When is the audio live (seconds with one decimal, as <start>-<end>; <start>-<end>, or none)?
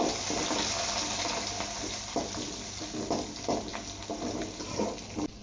0.0-5.4